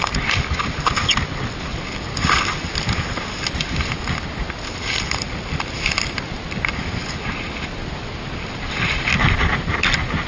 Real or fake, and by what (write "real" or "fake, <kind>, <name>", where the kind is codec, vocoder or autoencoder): real